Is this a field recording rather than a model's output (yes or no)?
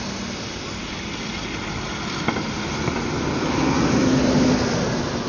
yes